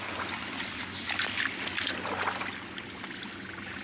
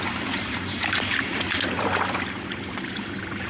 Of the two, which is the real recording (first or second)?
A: first